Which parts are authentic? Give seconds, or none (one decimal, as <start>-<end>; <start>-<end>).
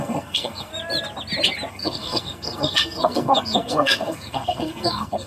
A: 0.7-1.7